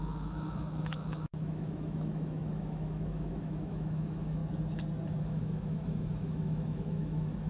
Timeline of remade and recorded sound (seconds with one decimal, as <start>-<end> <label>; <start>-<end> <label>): 0.0-4.4 remade; 4.4-5.2 recorded; 5.2-7.5 remade